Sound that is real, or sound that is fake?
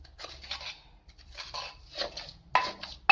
real